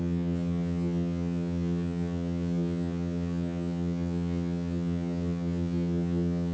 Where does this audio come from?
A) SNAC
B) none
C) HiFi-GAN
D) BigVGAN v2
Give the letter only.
C